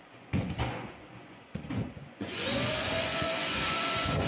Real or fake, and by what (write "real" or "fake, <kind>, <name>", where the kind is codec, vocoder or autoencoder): fake, vocoder, Vocos